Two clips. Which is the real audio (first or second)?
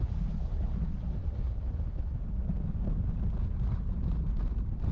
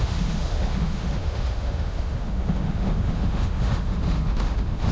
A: first